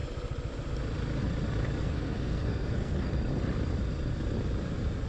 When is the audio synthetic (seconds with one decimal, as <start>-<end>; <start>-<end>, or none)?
1.8-3.1